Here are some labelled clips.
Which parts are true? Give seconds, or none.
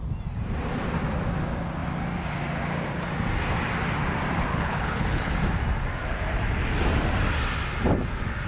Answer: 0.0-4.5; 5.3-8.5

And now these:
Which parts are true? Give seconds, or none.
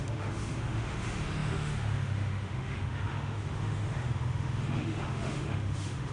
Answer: none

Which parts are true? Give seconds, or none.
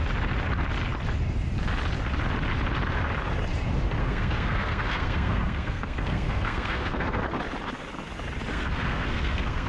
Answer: 0.0-4.0; 7.2-8.5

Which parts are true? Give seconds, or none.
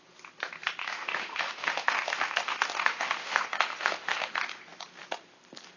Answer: 0.0-0.8; 4.3-5.8